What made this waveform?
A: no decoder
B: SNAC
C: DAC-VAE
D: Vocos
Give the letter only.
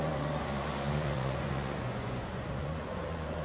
D